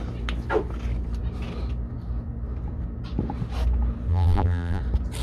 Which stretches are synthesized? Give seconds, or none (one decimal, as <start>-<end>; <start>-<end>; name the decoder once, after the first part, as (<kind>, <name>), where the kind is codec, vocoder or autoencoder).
4.1-4.8 (vocoder, BigVGAN v2)